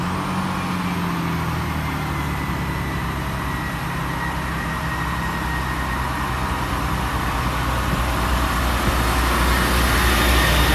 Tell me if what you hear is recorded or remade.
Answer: recorded